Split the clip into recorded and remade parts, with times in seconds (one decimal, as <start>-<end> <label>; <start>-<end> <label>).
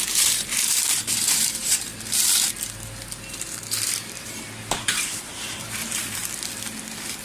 0.0-1.9 remade; 1.9-4.1 recorded; 4.1-6.2 remade; 6.2-7.2 recorded